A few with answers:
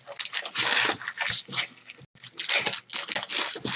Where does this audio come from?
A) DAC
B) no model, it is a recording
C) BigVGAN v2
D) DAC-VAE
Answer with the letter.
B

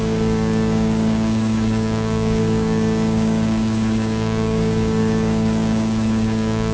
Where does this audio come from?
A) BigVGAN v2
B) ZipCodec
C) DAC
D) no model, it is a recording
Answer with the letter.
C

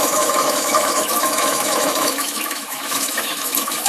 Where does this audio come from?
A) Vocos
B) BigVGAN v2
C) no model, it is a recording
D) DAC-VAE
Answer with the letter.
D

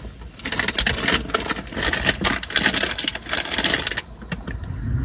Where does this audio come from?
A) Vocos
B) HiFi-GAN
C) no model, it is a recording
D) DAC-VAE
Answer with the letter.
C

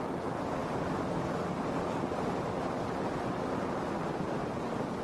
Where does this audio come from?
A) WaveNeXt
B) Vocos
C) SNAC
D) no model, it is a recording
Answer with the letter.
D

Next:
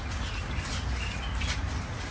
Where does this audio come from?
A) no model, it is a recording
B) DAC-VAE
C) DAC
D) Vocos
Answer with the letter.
A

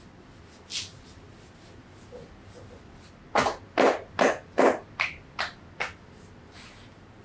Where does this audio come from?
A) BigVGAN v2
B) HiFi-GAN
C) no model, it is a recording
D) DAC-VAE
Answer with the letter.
C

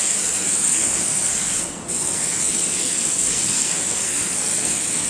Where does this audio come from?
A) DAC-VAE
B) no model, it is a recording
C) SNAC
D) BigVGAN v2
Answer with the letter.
C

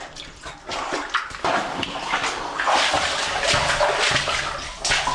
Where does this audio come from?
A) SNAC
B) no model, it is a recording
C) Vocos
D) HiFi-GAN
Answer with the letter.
B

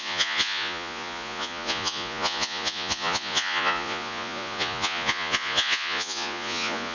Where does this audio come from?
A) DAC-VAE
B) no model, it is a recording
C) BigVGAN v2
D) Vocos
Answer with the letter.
D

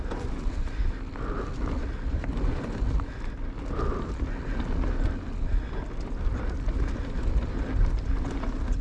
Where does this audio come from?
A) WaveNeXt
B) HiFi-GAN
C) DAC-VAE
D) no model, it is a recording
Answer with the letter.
D